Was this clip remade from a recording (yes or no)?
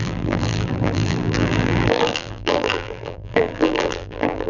yes